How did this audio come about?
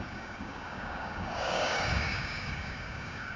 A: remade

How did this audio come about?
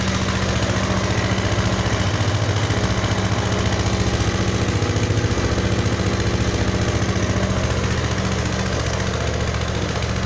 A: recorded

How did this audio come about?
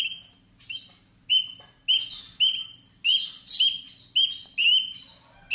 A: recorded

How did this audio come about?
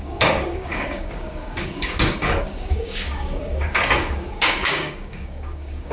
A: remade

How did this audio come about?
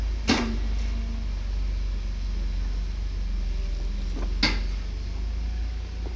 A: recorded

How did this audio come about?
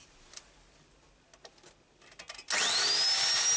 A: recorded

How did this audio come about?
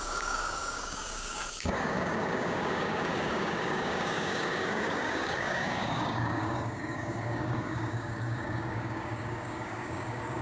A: remade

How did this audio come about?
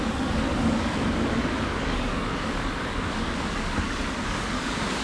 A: remade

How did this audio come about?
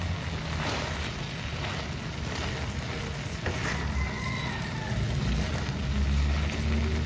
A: recorded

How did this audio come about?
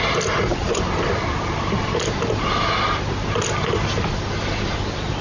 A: recorded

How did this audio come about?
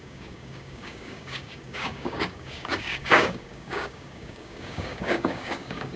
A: remade